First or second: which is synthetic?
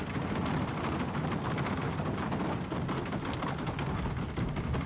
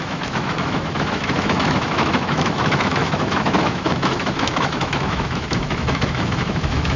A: second